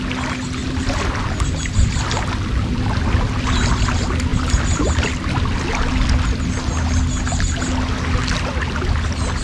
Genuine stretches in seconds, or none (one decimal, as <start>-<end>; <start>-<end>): 0.0-9.4